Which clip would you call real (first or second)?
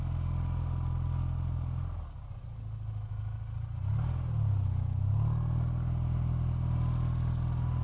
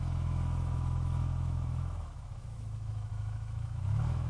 first